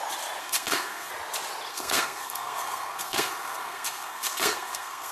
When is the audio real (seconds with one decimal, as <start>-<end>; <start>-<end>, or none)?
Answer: 0.0-0.4; 1.1-1.7